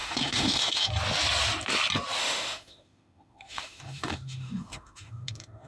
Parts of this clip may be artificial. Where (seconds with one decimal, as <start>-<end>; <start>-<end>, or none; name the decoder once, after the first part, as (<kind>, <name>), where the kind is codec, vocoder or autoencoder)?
0.0-0.9 (autoencoder, DAC-VAE); 2.2-5.7